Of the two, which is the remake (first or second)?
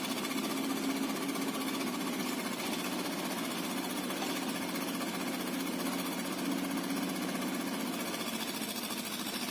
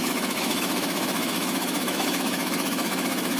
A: second